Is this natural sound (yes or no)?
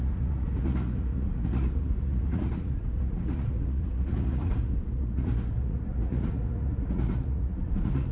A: no